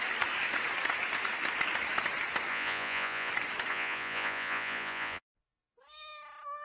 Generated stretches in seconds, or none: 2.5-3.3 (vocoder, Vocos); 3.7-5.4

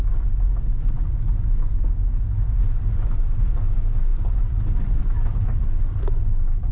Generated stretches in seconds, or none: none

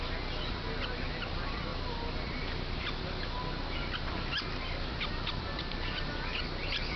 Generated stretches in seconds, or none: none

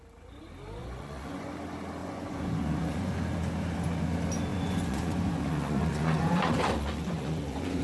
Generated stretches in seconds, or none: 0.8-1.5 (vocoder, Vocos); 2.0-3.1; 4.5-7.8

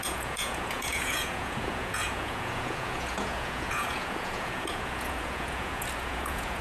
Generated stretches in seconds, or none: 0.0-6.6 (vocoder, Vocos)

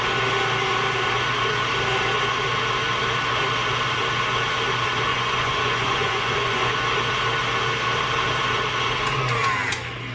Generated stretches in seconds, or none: 5.1-6.7 (vocoder, Vocos)

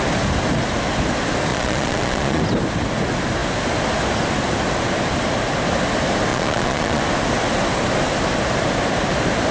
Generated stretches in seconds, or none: 1.5-2.4 (vocoder, Vocos); 6.3-7.0

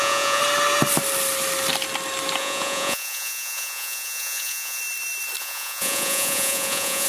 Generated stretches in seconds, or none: 0.0-0.4 (vocoder, Vocos); 2.4-4.8; 5.4-7.1